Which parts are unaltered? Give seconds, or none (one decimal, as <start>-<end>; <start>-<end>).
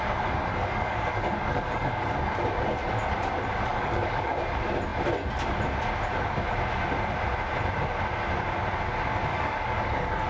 0.0-0.5; 2.3-3.7; 4.3-9.3